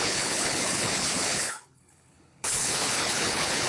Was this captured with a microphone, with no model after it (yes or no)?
no